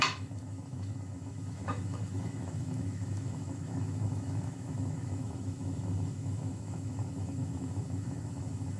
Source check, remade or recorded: remade